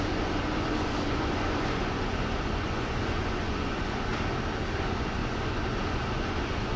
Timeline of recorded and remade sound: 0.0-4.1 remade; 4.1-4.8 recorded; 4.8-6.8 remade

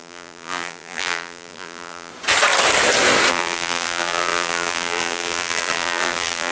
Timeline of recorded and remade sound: 0.0-2.1 remade; 2.1-3.3 recorded; 3.3-6.5 remade